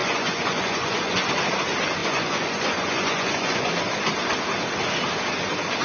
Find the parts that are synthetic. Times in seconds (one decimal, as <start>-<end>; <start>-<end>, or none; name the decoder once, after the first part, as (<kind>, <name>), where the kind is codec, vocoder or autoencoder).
0.0-1.3 (vocoder, Vocos); 2.0-3.7